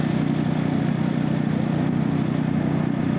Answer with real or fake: real